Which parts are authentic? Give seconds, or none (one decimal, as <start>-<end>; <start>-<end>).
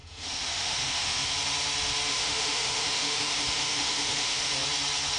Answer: 1.3-2.1; 4.5-5.2